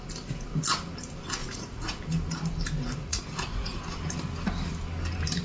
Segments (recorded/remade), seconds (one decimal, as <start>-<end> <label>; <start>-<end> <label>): 0.0-1.4 recorded; 1.4-2.0 remade; 2.0-3.0 recorded; 3.0-3.8 remade; 3.8-5.4 recorded